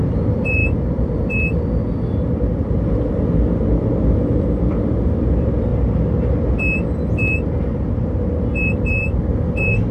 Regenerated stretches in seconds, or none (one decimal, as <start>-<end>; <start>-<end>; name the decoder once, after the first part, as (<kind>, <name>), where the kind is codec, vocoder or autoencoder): 0.0-5.7 (vocoder, BigVGAN v2); 8.7-9.9